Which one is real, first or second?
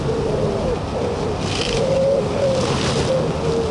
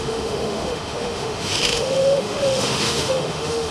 first